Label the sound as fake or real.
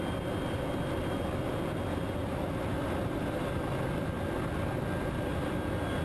real